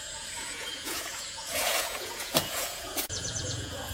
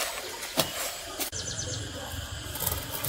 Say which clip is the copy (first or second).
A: first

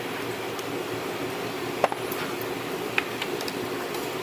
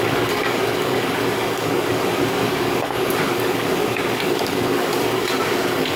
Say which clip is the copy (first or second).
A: second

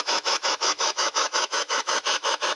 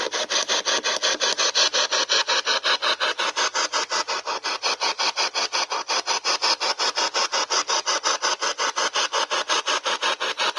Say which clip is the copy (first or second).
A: first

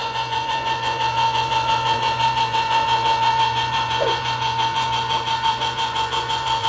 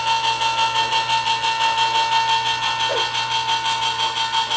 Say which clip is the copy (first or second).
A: first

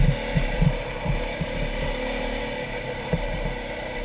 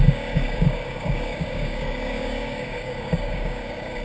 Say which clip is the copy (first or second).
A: second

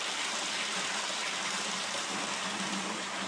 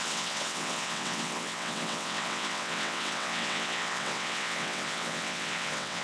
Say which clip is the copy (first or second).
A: second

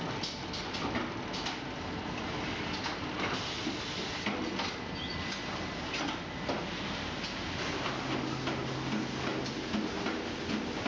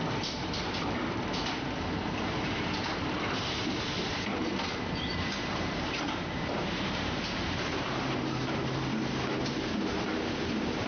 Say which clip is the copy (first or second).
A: second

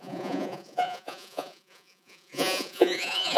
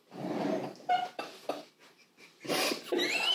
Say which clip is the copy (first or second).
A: first